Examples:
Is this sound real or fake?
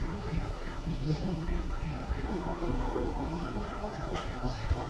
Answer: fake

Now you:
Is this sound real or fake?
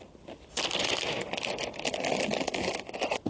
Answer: real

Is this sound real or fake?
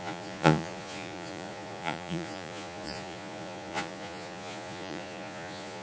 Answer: fake